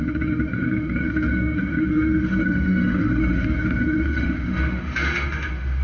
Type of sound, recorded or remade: remade